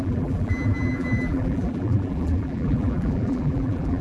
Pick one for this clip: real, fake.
fake